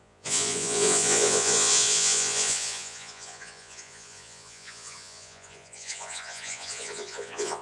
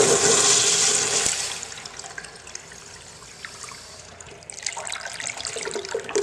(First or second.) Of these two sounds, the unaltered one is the second